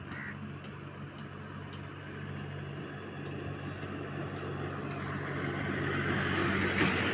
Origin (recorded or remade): recorded